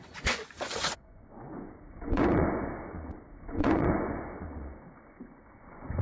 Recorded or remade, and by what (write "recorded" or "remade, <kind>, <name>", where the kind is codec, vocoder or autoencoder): remade, vocoder, Vocos